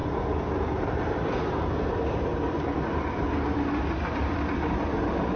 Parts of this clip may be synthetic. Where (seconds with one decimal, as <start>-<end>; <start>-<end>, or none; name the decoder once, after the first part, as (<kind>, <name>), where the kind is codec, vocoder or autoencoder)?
2.3-5.4 (vocoder, BigVGAN v2)